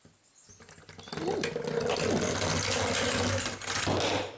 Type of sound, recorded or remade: recorded